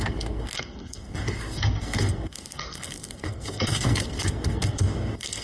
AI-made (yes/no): yes